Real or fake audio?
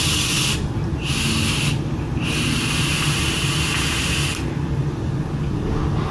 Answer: real